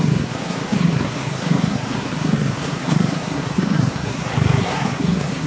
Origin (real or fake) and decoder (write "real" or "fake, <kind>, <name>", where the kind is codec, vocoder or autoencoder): fake, codec, SNAC